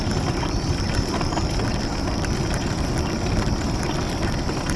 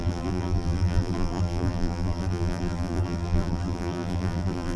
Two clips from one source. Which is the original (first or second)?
first